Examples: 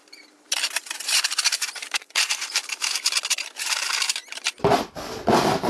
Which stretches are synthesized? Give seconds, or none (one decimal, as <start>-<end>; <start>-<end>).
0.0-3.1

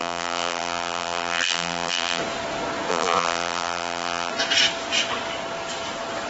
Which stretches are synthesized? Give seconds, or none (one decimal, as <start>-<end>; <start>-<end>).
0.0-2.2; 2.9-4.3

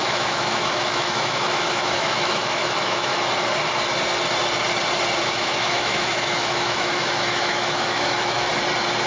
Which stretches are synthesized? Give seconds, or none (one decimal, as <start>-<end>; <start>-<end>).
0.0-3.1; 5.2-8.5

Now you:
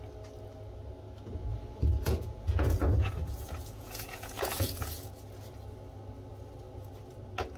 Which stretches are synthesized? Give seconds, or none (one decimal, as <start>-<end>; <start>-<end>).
1.5-5.1